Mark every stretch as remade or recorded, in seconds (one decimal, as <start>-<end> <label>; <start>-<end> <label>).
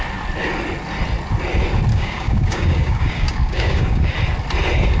0.0-1.9 recorded; 1.9-4.1 remade; 4.1-5.0 recorded